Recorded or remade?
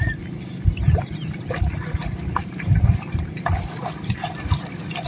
recorded